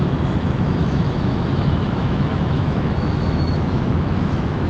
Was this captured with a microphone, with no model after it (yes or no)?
no